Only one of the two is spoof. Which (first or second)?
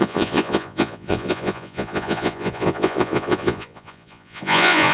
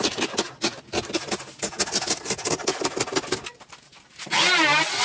first